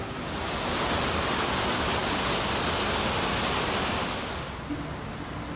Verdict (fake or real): real